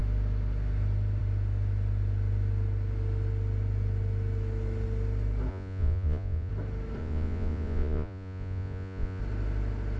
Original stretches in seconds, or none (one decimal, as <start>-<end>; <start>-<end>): 0.0-5.5; 6.5-7.0; 9.2-10.0

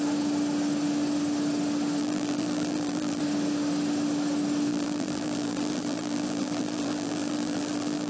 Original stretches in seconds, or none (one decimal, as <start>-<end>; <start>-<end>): 0.0-2.0; 3.2-4.7

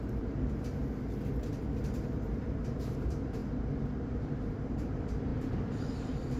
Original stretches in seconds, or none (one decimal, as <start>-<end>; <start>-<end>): 0.8-1.5; 3.4-4.1

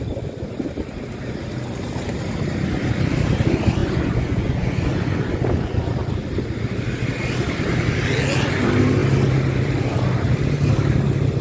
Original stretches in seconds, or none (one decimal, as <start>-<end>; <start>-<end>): 0.0-3.8; 5.3-11.4

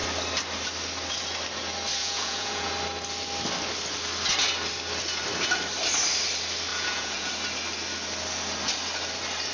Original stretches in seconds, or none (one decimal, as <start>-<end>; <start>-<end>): 0.0-2.0; 2.7-6.7; 7.3-9.5

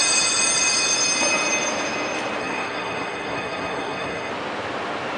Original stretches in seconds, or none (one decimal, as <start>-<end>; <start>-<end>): 0.0-2.4; 4.3-5.2

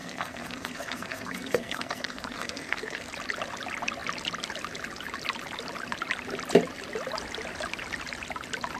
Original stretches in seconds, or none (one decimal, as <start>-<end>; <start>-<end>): 3.1-8.8

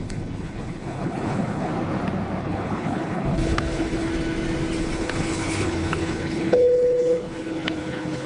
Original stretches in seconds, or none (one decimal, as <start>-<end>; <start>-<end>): 1.7-2.4; 4.1-4.8